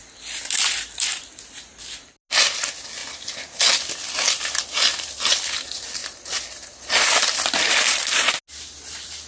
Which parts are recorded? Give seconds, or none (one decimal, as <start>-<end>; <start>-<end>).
0.0-9.3